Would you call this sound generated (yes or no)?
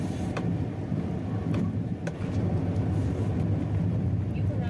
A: no